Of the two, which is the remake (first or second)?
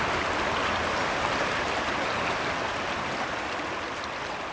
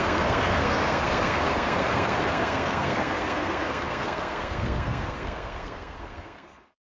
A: second